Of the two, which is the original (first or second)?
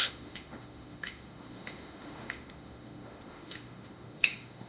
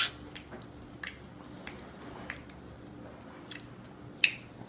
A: second